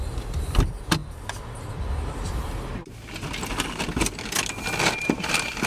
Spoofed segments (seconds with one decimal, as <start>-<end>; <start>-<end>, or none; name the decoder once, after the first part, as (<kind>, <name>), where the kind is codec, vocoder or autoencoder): 0.0-2.7 (vocoder, BigVGAN v2); 5.0-5.7